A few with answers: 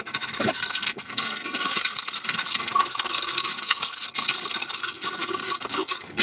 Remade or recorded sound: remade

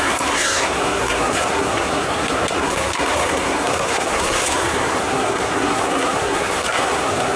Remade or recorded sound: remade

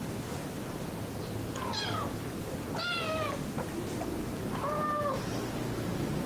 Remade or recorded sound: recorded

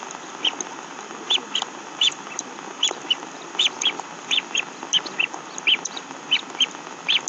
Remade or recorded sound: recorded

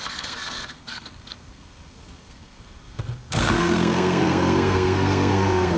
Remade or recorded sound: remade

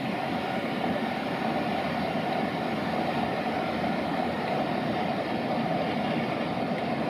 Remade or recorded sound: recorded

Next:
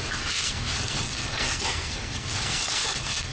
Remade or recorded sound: remade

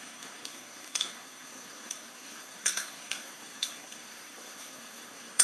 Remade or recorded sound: remade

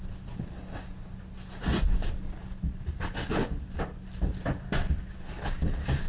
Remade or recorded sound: recorded